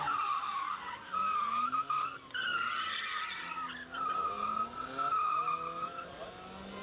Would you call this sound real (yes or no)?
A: yes